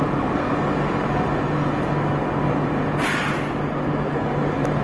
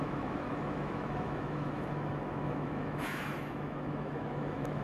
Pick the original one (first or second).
first